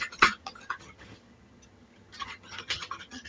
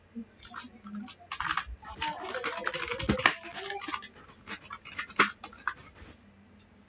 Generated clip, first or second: first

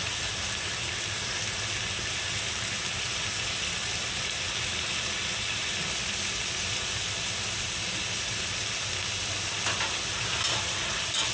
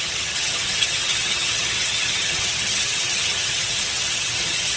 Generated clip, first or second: second